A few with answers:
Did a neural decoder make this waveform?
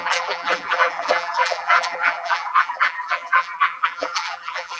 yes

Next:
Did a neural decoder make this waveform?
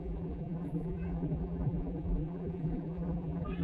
yes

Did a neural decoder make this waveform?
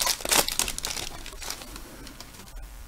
no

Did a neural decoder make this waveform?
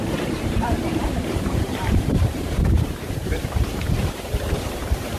yes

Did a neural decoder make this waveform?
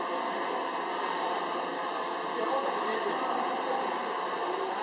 yes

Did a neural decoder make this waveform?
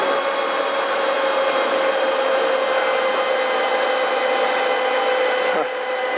no